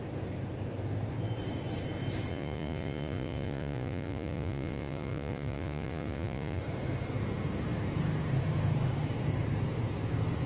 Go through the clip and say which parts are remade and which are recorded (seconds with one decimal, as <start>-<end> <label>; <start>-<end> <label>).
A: 0.0-2.3 recorded; 2.3-6.6 remade; 6.6-10.5 recorded